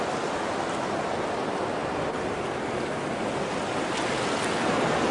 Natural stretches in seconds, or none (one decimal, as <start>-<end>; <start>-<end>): 0.0-5.1